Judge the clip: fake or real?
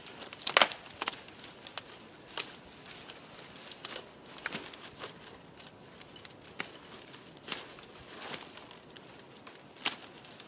real